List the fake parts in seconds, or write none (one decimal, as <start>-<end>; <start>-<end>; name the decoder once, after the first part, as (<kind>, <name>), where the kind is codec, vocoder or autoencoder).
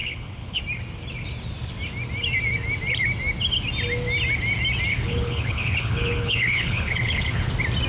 0.0-0.6 (codec, HILCodec); 4.9-7.5